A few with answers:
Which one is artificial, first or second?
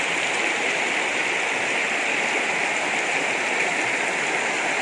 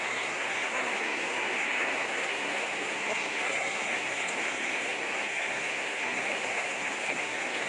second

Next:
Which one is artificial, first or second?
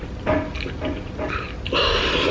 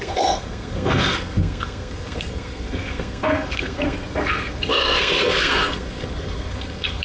second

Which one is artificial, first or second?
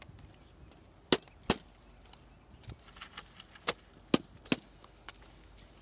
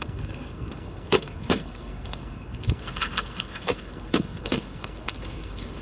second